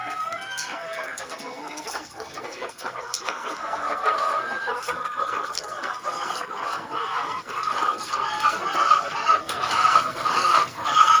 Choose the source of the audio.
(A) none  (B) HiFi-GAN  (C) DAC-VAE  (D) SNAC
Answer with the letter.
D